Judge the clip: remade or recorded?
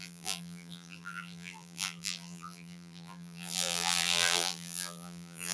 remade